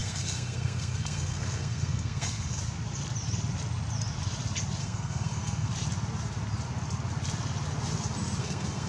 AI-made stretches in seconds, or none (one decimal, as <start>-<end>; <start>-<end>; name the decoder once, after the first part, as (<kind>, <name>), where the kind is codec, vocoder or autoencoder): 0.0-2.6 (codec, SNAC); 4.8-5.7; 8.4-8.9